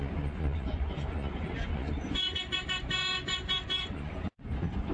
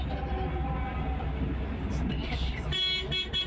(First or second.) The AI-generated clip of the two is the first